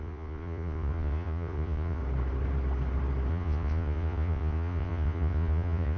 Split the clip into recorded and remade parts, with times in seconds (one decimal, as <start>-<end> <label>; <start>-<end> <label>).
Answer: 0.0-2.0 remade; 2.0-3.3 recorded; 3.3-6.0 remade